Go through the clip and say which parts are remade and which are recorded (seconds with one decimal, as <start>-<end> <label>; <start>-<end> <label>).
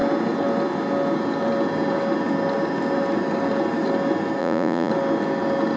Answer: 0.0-4.4 recorded; 4.4-4.9 remade; 4.9-5.8 recorded